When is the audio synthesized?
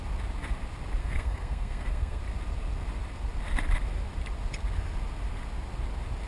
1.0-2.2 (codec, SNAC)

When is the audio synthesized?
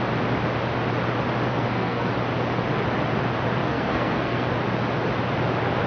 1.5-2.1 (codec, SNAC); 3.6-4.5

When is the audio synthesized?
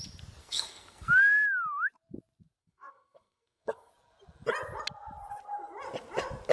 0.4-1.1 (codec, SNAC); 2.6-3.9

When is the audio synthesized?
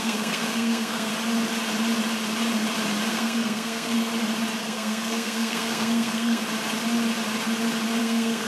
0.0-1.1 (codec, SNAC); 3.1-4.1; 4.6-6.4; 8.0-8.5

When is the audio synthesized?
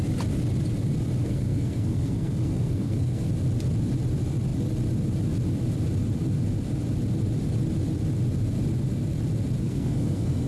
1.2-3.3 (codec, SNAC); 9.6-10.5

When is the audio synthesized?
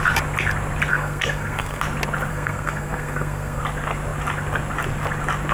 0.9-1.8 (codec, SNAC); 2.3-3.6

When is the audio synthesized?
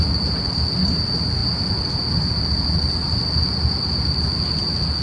none